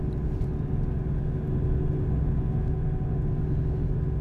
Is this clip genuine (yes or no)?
yes